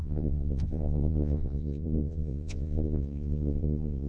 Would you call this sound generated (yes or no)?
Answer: yes